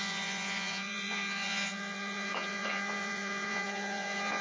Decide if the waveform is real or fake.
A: fake